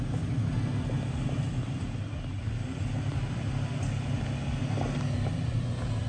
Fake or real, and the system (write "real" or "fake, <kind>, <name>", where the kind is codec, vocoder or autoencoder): real